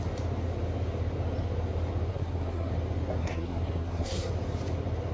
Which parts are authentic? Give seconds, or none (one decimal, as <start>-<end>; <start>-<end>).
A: 0.0-2.1; 2.7-3.2; 4.3-5.1